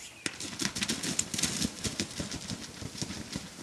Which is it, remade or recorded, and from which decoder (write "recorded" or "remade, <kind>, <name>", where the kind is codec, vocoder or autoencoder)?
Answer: recorded